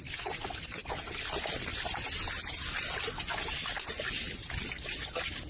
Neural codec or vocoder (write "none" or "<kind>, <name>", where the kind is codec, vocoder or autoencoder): none